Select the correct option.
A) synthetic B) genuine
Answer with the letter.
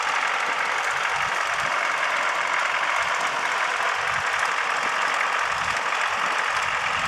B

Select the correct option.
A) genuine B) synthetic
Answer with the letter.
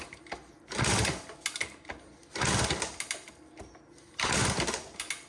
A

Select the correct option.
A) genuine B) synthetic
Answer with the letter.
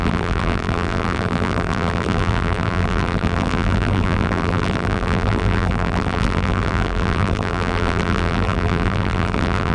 B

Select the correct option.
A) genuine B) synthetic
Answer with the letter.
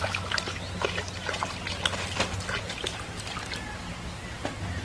A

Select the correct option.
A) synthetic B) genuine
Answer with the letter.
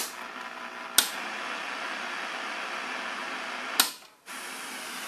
B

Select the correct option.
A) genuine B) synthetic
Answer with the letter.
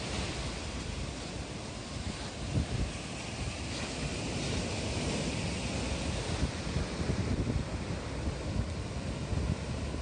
A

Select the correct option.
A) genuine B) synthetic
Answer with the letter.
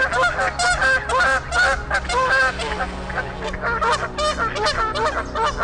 A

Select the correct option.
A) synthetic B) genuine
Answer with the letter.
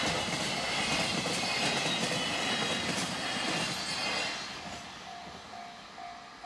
B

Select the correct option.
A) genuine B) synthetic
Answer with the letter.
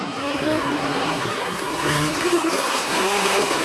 B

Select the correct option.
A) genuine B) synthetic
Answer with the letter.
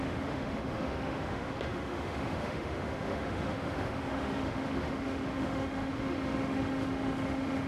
B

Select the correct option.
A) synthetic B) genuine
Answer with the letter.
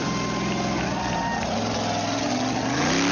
B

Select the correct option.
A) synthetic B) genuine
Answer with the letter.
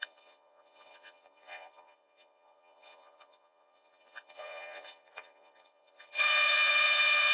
A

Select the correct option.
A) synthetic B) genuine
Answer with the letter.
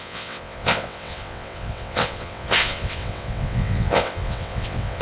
A